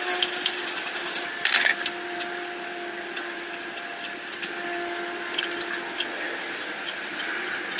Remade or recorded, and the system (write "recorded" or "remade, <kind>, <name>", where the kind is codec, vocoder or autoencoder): recorded